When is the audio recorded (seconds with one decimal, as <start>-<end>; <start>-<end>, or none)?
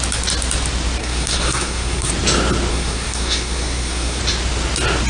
0.0-1.0; 2.1-2.7; 4.2-5.1